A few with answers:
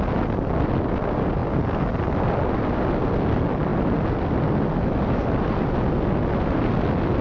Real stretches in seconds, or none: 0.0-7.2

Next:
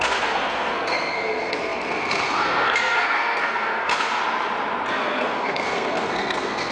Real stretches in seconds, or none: 4.2-4.9

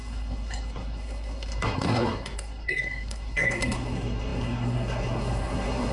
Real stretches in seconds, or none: none